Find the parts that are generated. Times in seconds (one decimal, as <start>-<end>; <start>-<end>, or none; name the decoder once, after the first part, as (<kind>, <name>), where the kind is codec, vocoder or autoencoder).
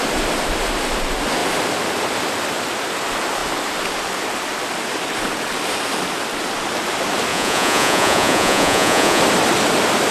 7.3-9.2 (vocoder, Vocos)